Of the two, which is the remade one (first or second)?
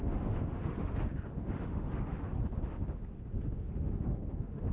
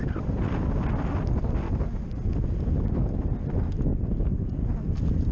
first